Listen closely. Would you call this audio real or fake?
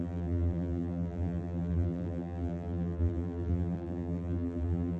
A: fake